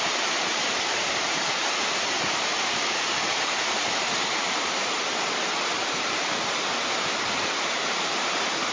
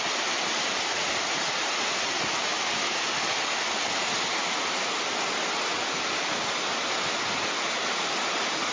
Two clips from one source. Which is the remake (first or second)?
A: first